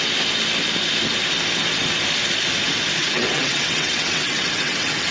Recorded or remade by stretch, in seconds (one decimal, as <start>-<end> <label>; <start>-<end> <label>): 0.0-3.0 recorded; 3.0-5.1 remade